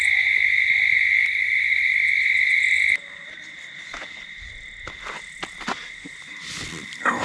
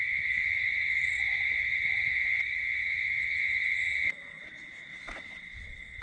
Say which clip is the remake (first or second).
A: second